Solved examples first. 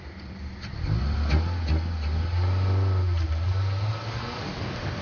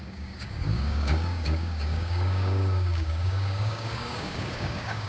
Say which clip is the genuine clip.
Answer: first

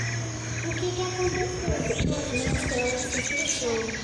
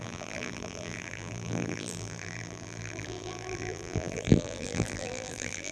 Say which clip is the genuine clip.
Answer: first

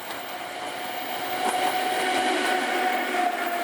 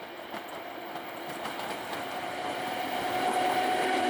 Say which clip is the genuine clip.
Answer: first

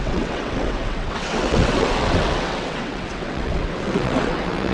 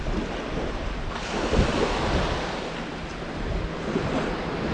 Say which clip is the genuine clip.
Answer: second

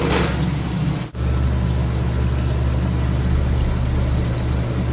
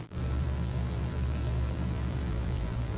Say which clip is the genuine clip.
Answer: first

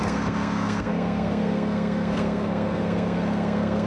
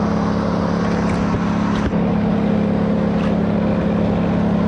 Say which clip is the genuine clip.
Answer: second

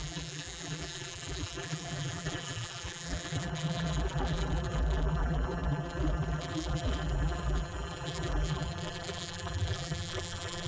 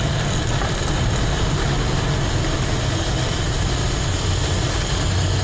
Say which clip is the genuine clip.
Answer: second